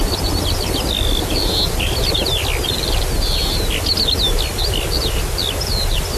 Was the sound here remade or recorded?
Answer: recorded